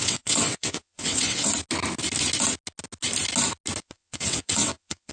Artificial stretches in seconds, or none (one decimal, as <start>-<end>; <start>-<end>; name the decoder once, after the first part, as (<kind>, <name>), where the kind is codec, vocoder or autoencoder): 0.0-1.5 (vocoder, WaveNeXt); 3.8-5.1